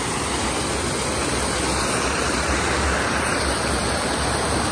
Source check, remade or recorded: recorded